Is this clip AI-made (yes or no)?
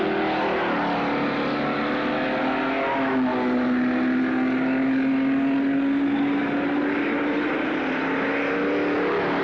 no